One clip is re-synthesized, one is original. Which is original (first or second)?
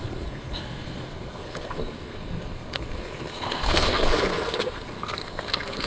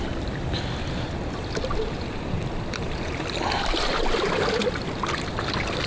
second